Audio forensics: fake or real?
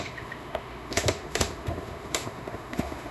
fake